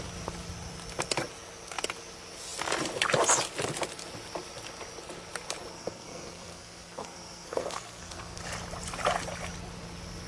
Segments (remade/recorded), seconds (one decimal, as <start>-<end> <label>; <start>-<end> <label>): 0.0-5.7 recorded; 5.7-8.4 remade; 8.4-10.3 recorded